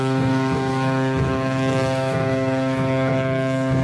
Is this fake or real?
fake